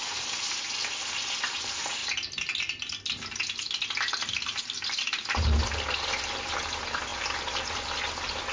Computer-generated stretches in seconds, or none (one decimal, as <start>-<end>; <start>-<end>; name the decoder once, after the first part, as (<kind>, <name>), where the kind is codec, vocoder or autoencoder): none